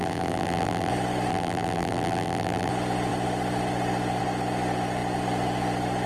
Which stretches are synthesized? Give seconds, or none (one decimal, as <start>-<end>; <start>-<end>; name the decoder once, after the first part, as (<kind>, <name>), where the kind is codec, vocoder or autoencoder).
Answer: 0.0-0.9 (vocoder, BigVGAN v2); 1.3-2.7